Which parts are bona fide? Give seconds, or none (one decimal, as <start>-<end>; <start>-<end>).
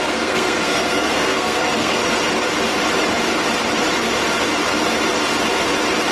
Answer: 2.0-6.1